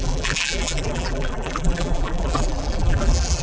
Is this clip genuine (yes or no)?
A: no